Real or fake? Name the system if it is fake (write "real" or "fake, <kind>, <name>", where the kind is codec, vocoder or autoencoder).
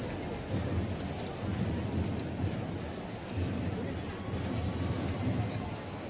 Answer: real